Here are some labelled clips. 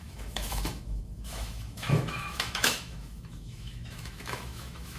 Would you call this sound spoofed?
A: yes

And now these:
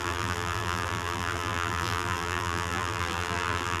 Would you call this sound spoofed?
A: yes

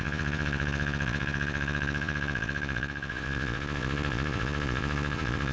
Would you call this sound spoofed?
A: yes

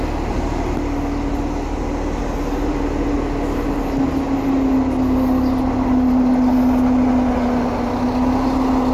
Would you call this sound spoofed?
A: no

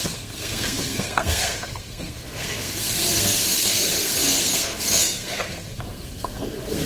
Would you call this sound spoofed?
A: yes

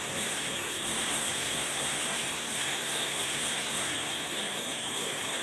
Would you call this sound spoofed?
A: yes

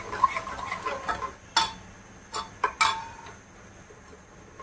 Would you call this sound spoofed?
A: no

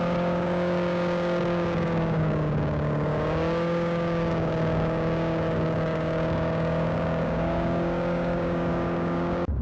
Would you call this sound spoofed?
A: yes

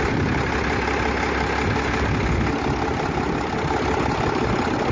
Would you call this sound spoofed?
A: no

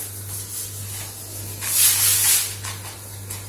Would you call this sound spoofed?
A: no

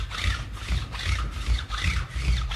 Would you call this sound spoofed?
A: no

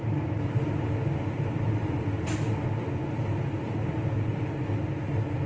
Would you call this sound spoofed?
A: no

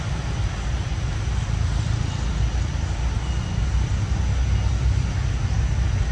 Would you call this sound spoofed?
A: no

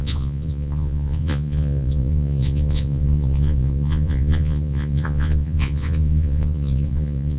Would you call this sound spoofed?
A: yes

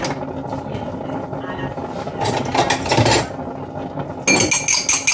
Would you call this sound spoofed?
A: no